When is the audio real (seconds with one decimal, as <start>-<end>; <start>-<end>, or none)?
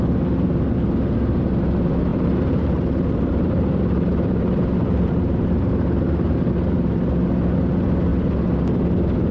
0.0-2.1; 6.5-9.3